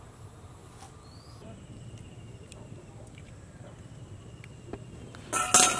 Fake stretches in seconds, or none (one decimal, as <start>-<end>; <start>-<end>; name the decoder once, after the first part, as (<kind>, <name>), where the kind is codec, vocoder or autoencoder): none